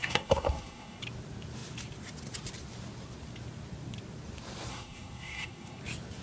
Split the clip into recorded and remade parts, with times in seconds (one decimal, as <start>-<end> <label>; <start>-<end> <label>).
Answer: 0.0-1.0 remade; 1.0-4.7 recorded; 4.7-5.8 remade; 5.8-6.2 recorded